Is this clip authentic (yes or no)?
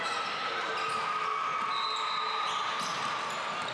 yes